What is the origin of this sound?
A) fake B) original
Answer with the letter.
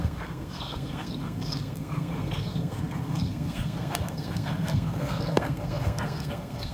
A